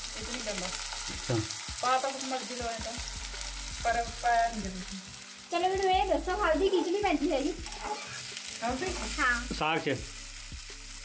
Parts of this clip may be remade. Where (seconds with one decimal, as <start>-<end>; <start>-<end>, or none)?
none